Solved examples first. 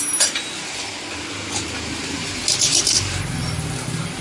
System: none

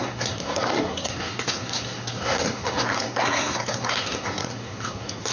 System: codec, SNAC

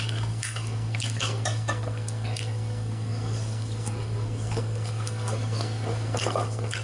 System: codec, SNAC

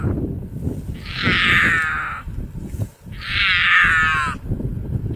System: none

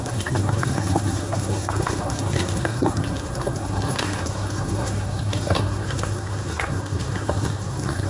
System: codec, SNAC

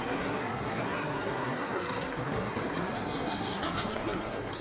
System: codec, SNAC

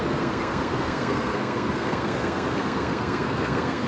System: codec, SNAC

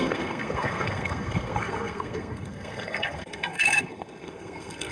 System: codec, SNAC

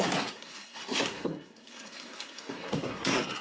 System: codec, SNAC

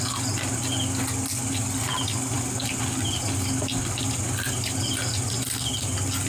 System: none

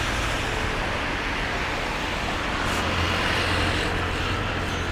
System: none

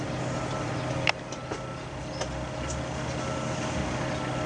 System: none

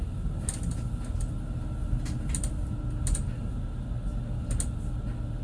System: none